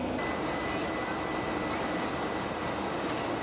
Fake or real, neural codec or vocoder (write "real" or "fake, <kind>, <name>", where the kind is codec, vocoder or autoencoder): real